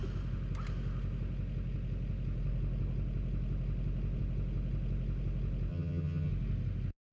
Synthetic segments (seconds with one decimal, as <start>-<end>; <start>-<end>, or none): 5.7-6.3